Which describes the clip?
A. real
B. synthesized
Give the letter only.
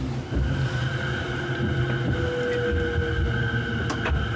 A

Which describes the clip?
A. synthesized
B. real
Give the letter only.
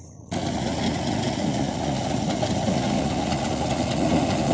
A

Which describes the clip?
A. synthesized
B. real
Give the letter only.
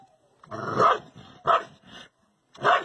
B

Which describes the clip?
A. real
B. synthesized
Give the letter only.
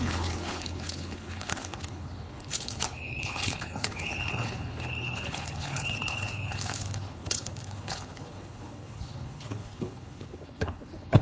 B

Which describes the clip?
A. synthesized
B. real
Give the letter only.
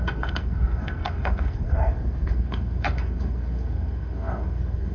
A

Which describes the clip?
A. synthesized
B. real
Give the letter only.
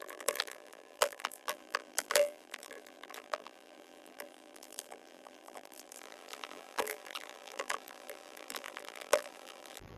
A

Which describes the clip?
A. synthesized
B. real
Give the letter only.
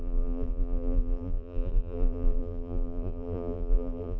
A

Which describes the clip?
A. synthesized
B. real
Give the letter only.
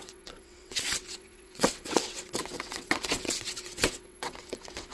A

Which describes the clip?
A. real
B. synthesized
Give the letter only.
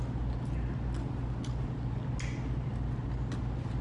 A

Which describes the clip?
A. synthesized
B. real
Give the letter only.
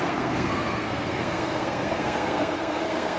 A